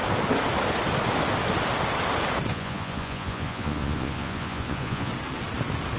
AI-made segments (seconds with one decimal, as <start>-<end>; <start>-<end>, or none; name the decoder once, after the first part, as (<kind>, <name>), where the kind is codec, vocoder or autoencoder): 2.5-5.1 (vocoder, Vocos)